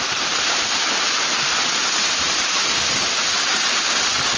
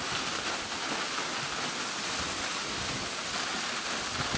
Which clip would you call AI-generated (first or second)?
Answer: first